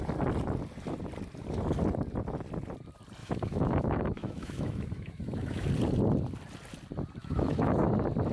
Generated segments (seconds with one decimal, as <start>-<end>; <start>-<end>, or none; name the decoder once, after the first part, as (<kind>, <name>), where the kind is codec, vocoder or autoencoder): 3.2-5.7 (autoencoder, DAC-VAE); 7.2-7.9